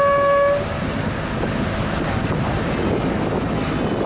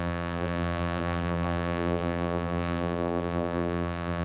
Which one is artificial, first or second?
second